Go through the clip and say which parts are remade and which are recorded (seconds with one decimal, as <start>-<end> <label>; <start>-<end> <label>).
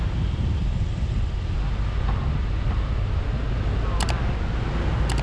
0.0-0.6 recorded; 0.6-3.4 remade; 3.4-5.2 recorded